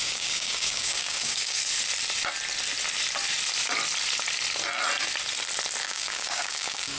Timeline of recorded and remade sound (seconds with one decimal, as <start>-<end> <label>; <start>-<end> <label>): 0.0-1.6 remade; 1.6-5.8 recorded; 5.8-7.0 remade